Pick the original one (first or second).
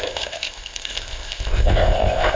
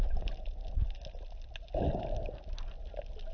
second